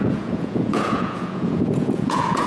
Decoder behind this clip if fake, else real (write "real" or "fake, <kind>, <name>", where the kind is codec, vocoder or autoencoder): fake, vocoder, Vocos